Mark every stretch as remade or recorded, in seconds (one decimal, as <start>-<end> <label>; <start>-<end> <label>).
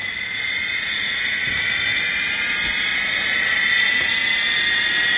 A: 0.0-5.2 remade